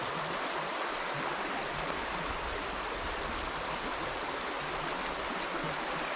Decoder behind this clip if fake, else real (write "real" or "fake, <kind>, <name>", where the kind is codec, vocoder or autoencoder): real